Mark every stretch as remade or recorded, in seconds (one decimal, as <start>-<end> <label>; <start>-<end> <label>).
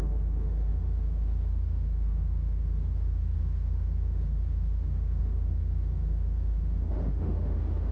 0.0-7.9 remade